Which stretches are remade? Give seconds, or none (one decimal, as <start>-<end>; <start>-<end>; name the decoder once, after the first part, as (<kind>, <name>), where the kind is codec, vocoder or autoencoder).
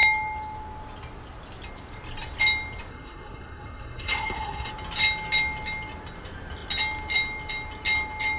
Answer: 2.9-4.7 (codec, SNAC)